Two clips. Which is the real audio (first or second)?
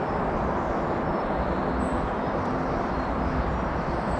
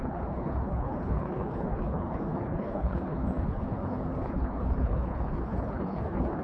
first